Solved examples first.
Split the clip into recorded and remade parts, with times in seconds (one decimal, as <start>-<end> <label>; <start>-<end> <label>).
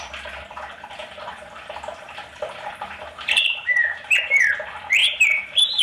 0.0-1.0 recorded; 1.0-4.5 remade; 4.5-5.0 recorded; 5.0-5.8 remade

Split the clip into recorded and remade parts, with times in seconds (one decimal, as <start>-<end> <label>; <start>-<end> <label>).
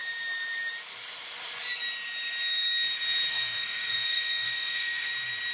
0.0-3.3 recorded; 3.3-5.1 remade; 5.1-5.5 recorded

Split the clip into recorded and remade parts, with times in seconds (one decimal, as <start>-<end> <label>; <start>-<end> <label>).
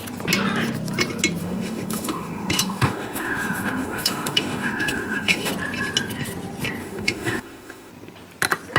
0.0-1.4 recorded; 1.4-5.5 remade; 5.5-6.8 recorded; 6.8-7.9 remade; 7.9-8.8 recorded